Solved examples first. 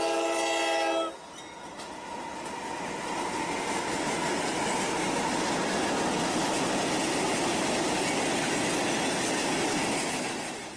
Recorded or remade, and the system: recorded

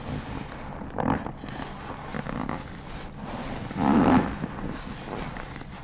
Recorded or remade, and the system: recorded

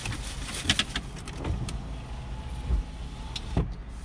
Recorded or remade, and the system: recorded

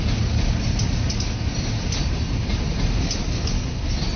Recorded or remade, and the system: recorded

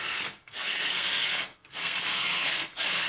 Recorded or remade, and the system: remade, codec, SNAC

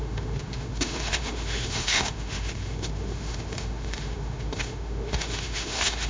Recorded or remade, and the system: remade, autoencoder, DAC-VAE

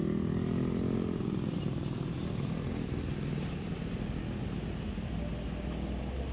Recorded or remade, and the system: recorded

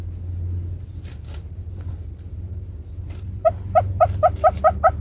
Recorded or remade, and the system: recorded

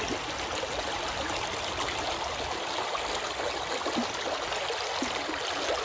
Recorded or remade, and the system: recorded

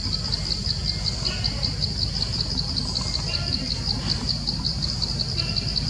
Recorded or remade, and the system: recorded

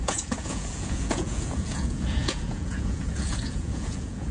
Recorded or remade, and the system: remade, vocoder, Vocos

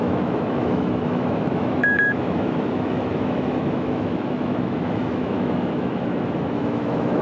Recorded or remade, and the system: remade, autoencoder, DAC-VAE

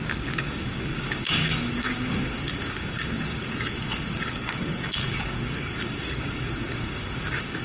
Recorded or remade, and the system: remade, codec, DAC